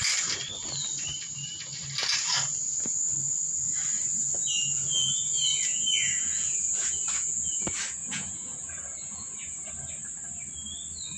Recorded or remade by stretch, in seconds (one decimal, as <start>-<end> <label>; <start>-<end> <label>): 0.0-4.2 recorded; 4.2-7.6 remade; 7.6-8.0 recorded; 8.0-9.7 remade; 9.7-11.2 recorded